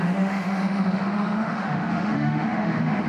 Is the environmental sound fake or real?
fake